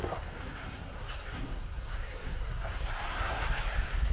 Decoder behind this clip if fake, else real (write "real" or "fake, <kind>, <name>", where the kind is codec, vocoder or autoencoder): fake, codec, SNAC